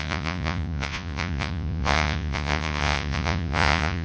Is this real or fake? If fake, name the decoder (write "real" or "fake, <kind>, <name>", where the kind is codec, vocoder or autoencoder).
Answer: fake, vocoder, Vocos